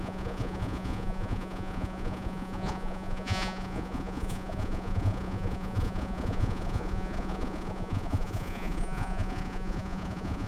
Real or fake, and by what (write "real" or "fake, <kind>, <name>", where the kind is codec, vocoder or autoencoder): fake, vocoder, Vocos